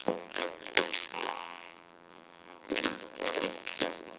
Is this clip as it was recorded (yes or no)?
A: no